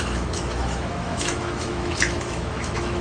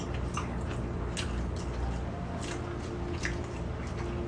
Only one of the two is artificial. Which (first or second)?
first